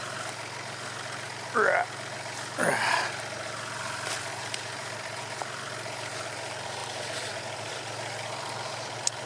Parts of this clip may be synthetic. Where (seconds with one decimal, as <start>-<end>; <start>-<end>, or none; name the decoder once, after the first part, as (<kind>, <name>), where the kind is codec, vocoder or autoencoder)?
6.8-7.4 (vocoder, BigVGAN v2)